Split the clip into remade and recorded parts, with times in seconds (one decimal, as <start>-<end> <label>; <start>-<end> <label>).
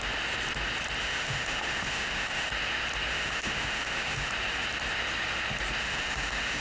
0.0-1.0 recorded; 1.0-2.5 remade; 2.5-3.1 recorded; 3.1-4.3 remade; 4.3-5.8 recorded; 5.8-6.6 remade